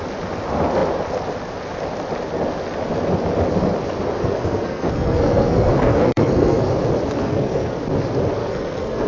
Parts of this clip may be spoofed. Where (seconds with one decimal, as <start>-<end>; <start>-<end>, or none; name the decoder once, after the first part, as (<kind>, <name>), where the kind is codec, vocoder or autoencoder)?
4.2-6.7 (codec, SNAC); 7.2-7.8; 8.4-9.1